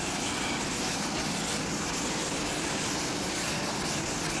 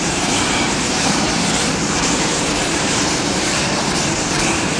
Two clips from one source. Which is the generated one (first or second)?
second